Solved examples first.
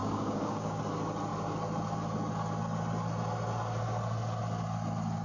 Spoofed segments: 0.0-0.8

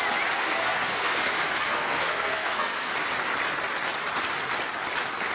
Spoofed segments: 0.4-2.9

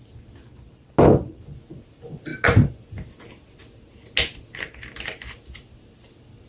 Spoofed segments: none